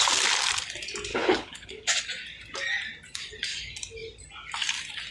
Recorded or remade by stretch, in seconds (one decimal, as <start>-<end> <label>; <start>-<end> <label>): 0.0-1.1 recorded; 1.1-2.0 remade; 2.0-5.1 recorded

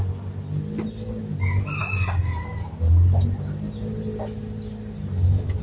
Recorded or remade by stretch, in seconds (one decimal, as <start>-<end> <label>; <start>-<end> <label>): 0.0-5.6 recorded

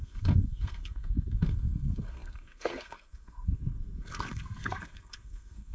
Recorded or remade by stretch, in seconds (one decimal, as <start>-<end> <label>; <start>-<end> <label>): 0.0-5.7 remade

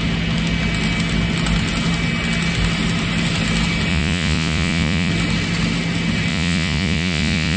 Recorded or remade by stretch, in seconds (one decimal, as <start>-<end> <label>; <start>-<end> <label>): 0.0-3.9 recorded; 3.9-5.1 remade; 5.1-6.3 recorded; 6.3-7.6 remade

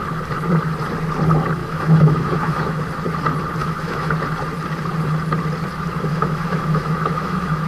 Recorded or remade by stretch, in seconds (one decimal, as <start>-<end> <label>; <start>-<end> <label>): 0.0-1.6 recorded; 1.6-2.8 remade; 2.8-3.6 recorded; 3.6-4.1 remade; 4.1-6.1 recorded; 6.1-7.7 remade

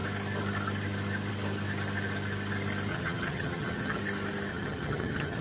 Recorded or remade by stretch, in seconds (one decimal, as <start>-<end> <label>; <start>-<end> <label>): 0.0-2.9 recorded; 2.9-4.0 remade; 4.0-4.5 recorded; 4.5-5.4 remade